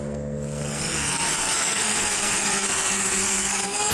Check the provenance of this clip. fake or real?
fake